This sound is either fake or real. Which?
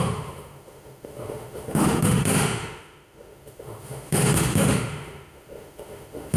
fake